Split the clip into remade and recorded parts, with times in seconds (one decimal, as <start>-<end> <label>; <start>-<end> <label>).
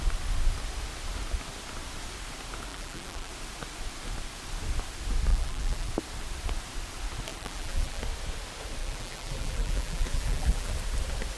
0.0-2.7 recorded; 2.7-3.3 remade; 3.3-5.3 recorded; 5.3-5.9 remade; 5.9-7.3 recorded; 7.3-8.0 remade; 8.0-8.8 recorded; 8.8-10.7 remade; 10.7-11.4 recorded